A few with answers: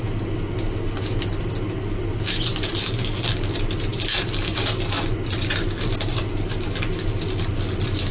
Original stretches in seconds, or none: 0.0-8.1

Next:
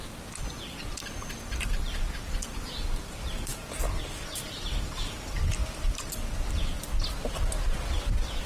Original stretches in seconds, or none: 0.0-8.5

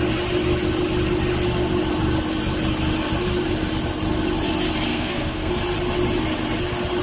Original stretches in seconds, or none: 0.0-4.9; 5.5-7.0